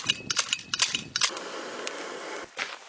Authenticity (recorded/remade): recorded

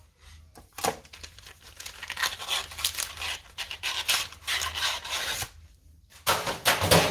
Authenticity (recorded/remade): recorded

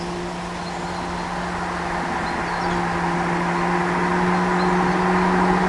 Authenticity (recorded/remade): recorded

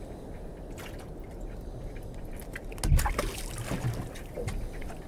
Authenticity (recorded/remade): recorded